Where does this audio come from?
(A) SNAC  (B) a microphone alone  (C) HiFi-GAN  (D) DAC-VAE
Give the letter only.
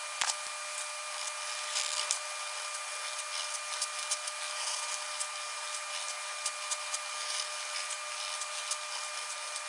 B